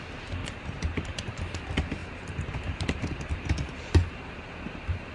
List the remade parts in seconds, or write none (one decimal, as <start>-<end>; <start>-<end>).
0.4-1.6; 2.0-5.1